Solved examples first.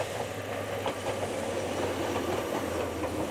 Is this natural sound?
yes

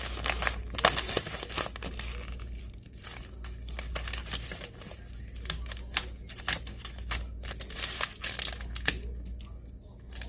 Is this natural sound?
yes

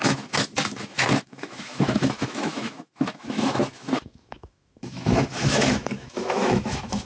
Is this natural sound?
no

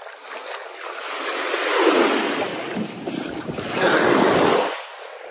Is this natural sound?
yes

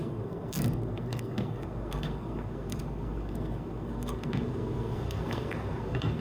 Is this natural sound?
no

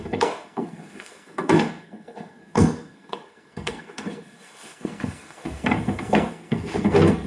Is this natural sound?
no